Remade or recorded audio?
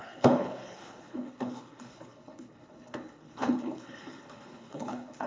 remade